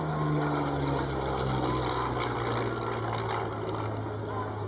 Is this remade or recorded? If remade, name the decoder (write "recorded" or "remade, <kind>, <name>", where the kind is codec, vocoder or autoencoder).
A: recorded